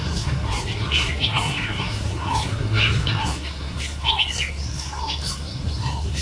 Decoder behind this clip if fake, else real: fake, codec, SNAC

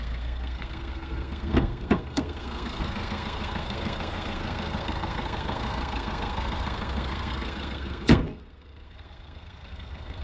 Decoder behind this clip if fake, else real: fake, codec, SNAC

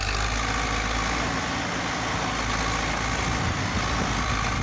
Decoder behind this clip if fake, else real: real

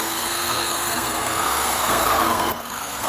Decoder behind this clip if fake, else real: fake, codec, SNAC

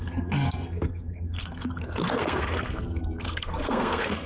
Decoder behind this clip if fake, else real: fake, codec, SNAC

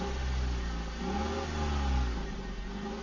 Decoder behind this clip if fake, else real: real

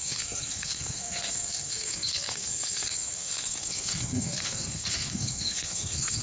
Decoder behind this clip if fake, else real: fake, codec, SNAC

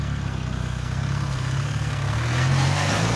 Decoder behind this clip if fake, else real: fake, codec, SNAC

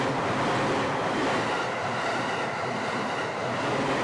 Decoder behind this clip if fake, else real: real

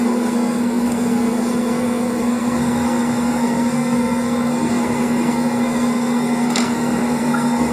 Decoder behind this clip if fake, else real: fake, codec, SNAC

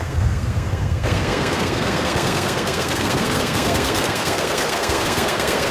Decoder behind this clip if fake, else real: fake, codec, SNAC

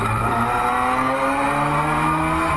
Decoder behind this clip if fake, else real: real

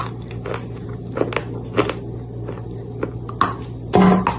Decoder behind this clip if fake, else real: real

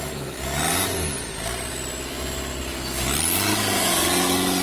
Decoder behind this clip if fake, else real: real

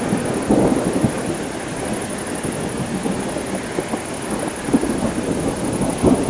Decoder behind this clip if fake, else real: real